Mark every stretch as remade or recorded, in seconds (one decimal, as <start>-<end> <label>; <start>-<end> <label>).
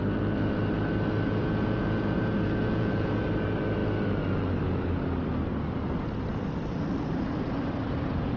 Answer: 0.0-1.4 recorded; 1.4-3.2 remade; 3.2-8.4 recorded